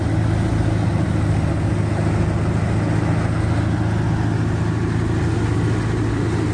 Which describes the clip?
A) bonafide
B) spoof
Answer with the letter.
A